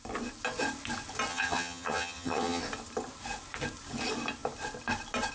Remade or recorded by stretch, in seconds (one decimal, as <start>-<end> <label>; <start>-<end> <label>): 0.0-1.3 recorded; 1.3-2.6 remade; 2.6-5.3 recorded